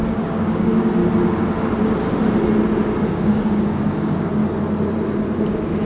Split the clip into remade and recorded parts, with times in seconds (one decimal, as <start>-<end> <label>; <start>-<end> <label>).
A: 0.0-1.0 remade; 1.0-3.1 recorded; 3.1-4.4 remade; 4.4-5.9 recorded